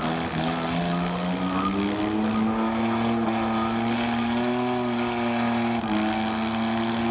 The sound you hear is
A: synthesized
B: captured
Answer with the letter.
B